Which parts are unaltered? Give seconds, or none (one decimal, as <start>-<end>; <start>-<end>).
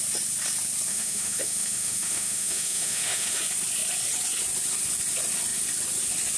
0.0-0.9; 3.4-6.4